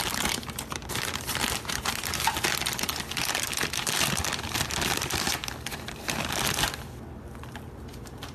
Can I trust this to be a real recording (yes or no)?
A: yes